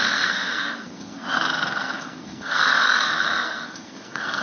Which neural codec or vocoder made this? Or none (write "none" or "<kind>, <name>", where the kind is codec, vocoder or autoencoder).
codec, SNAC